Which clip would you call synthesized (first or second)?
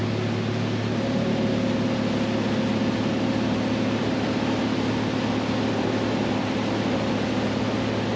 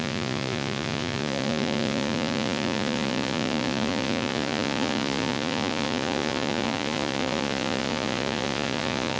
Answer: second